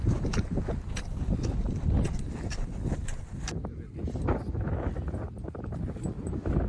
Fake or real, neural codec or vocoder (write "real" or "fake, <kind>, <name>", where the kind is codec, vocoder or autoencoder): real